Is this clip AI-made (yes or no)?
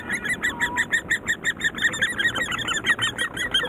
no